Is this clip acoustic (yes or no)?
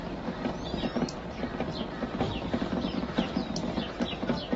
yes